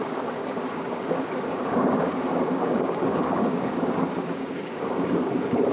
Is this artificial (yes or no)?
yes